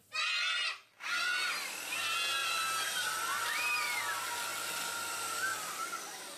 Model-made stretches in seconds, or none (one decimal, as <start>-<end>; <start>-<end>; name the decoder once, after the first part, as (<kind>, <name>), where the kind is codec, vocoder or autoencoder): 2.4-3.4 (vocoder, BigVGAN v2)